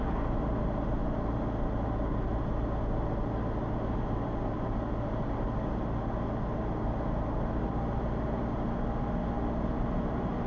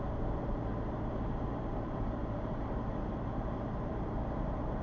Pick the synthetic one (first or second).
second